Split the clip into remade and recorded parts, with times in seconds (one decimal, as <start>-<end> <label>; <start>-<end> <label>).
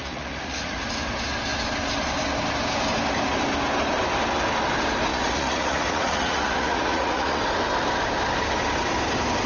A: 0.0-0.8 remade; 0.8-5.1 recorded; 5.1-7.4 remade; 7.4-9.5 recorded